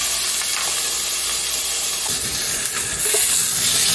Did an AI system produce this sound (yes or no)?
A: no